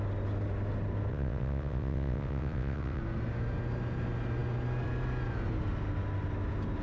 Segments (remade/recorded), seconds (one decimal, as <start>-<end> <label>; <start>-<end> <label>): 0.0-1.1 recorded; 1.1-3.0 remade; 3.0-6.8 recorded